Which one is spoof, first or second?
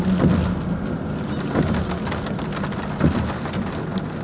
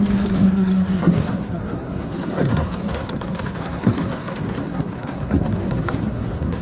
second